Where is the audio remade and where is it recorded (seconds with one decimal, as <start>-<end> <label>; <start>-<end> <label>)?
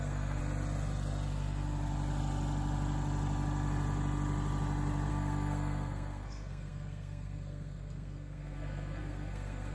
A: 0.0-0.4 remade; 0.4-5.1 recorded; 5.1-9.7 remade